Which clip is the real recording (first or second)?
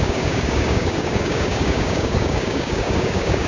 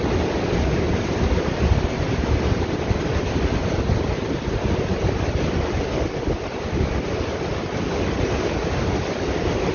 second